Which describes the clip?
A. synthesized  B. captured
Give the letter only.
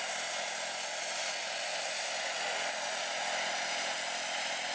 B